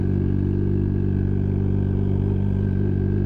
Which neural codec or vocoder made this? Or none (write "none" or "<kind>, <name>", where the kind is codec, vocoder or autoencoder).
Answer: none